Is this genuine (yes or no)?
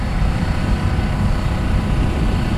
no